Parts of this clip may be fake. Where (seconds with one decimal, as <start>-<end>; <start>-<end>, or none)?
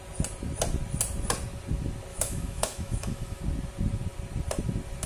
2.1-3.4